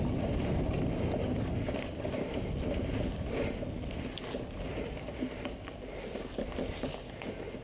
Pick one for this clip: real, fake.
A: real